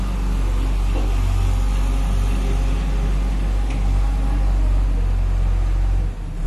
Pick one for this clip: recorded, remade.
recorded